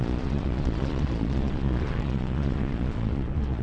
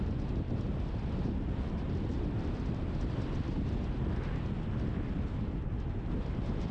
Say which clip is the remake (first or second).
first